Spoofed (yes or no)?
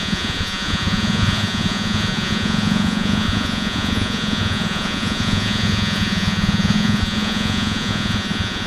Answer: yes